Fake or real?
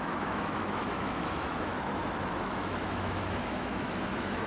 fake